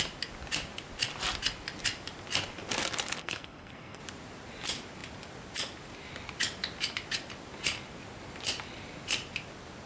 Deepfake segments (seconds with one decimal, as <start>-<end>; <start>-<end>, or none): 3.2-4.0